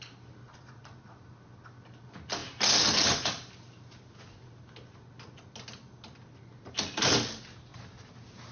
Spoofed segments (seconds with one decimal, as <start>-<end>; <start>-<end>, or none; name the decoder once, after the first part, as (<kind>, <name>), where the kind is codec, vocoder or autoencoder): 0.4-1.1 (vocoder, Vocos)